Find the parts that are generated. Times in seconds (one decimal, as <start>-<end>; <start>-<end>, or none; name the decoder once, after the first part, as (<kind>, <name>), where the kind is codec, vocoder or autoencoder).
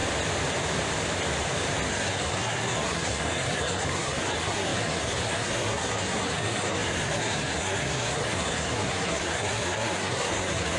1.9-10.8 (codec, SNAC)